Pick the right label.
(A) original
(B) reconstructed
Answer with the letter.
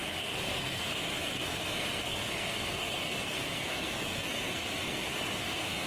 B